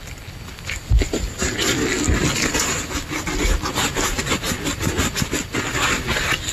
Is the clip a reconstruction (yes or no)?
no